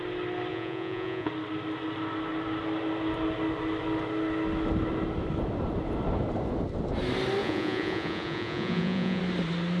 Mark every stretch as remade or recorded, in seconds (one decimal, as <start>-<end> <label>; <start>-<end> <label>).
0.0-0.5 recorded; 0.5-1.3 remade; 1.3-7.4 recorded; 7.4-9.2 remade; 9.2-9.8 recorded